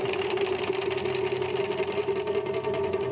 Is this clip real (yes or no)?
yes